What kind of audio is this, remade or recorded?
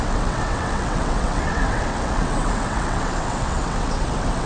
remade